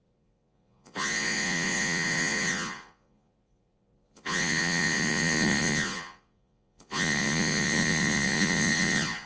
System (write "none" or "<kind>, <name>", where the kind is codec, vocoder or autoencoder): vocoder, Vocos